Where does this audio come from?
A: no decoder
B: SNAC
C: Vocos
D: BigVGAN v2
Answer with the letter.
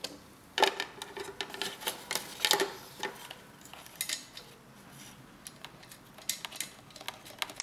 A